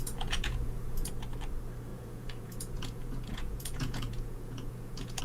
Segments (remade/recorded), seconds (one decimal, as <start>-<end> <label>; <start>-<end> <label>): 0.0-1.1 remade; 1.1-1.9 recorded; 1.9-5.2 remade